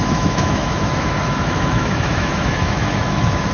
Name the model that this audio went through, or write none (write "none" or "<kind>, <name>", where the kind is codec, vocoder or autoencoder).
autoencoder, DAC-VAE